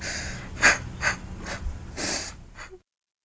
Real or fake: real